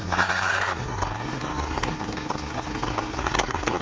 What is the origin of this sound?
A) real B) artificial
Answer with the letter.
B